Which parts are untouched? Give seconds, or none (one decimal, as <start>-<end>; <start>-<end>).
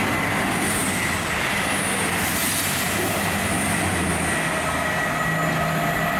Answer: 0.0-6.2